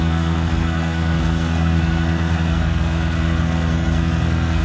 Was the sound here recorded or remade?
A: remade